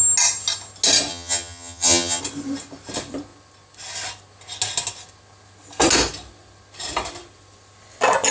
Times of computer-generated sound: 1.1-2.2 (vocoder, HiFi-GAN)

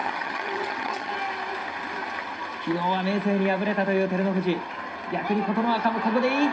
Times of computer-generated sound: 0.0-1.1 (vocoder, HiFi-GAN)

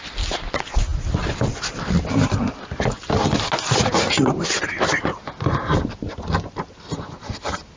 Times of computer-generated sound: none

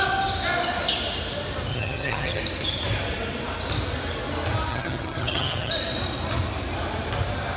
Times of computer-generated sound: 1.7-2.4 (vocoder, HiFi-GAN); 4.7-5.7

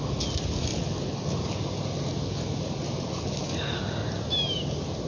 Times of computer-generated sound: none

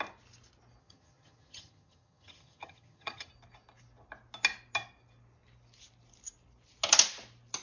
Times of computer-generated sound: 0.8-3.3 (vocoder, HiFi-GAN)